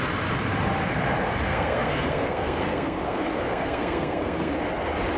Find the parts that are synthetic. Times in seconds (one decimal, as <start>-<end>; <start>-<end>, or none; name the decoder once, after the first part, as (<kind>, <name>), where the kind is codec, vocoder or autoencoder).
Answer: 1.5-4.5 (codec, SNAC)